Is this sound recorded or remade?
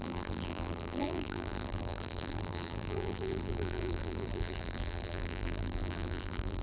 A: remade